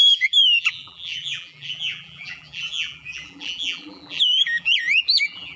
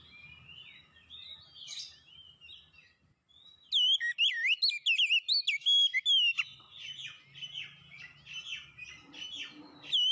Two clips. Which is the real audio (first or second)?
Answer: second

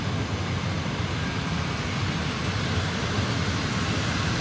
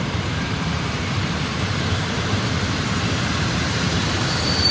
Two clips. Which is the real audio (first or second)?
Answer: first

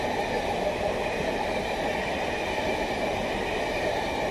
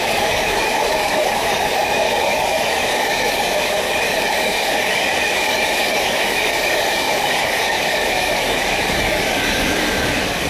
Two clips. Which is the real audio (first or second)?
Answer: first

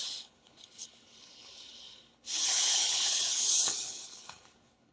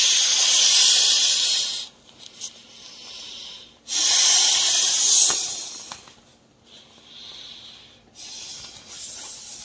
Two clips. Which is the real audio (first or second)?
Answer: second